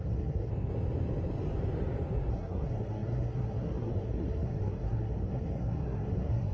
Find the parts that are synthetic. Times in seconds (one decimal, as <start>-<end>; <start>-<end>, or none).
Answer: 0.0-0.5; 2.3-6.5